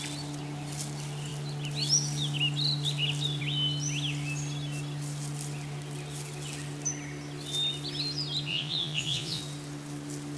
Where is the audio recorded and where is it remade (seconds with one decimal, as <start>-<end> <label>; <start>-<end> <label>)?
0.0-8.5 recorded; 8.5-9.4 remade; 9.4-10.4 recorded